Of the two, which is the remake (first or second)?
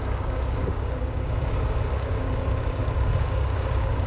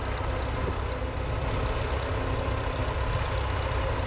first